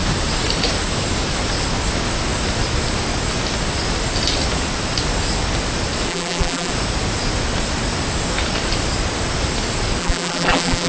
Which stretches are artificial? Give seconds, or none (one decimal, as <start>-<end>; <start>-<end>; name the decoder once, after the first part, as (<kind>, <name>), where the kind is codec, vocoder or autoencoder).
6.1-6.7 (vocoder, BigVGAN v2); 10.0-10.9